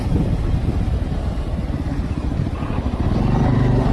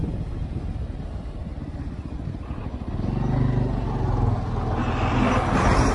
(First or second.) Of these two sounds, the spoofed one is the first